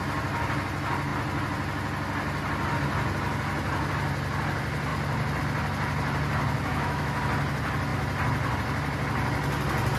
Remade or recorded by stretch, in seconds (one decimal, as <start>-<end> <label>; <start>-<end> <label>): 0.0-6.7 recorded; 6.7-7.2 remade; 7.2-10.0 recorded